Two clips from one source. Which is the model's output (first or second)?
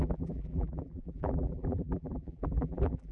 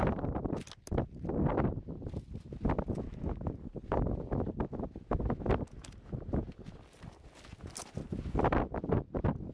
first